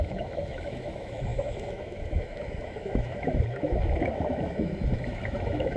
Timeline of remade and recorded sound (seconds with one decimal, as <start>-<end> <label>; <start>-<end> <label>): 0.0-5.8 remade